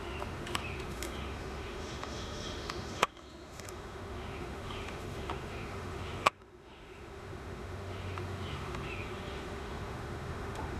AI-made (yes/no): yes